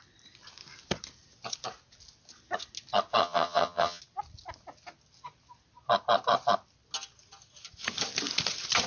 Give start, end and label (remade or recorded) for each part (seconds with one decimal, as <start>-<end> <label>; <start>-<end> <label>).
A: 0.0-3.2 recorded; 3.2-4.0 remade; 4.0-8.9 recorded